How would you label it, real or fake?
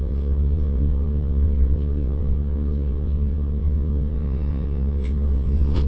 fake